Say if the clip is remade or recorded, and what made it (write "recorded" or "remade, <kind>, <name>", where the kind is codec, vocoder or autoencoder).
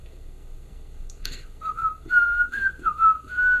remade, codec, SNAC